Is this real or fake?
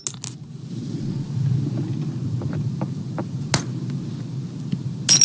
real